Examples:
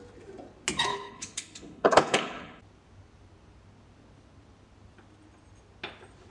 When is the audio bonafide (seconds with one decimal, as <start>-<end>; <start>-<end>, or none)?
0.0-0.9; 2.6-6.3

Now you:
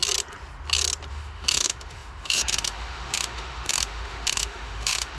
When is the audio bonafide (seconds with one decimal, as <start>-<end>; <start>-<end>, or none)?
0.0-1.1

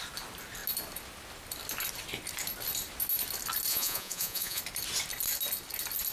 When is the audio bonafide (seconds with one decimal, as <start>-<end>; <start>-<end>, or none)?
0.0-3.7; 4.6-6.1

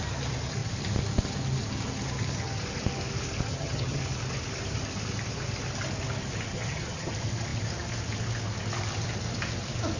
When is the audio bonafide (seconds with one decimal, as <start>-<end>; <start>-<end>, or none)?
0.0-3.5; 4.0-6.5; 7.1-10.0

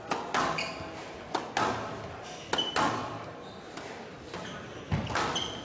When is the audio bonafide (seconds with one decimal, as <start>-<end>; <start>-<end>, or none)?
0.0-3.0; 3.9-5.6

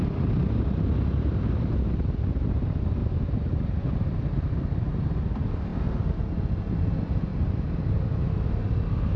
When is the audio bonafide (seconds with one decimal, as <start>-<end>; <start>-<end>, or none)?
0.0-3.0; 4.6-7.3; 8.0-9.2

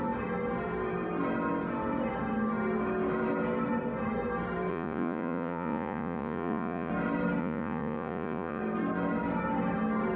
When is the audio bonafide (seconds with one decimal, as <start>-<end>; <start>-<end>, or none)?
0.0-4.7; 6.9-7.4; 8.6-10.2